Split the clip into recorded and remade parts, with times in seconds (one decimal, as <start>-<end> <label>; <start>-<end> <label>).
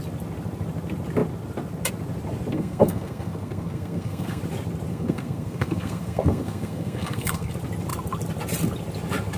0.0-2.5 recorded; 2.5-4.4 remade; 4.4-4.9 recorded; 4.9-7.5 remade; 7.5-9.4 recorded